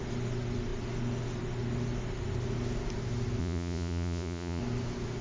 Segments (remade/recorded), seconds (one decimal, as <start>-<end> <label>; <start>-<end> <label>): 0.0-3.4 recorded; 3.4-4.6 remade; 4.6-5.2 recorded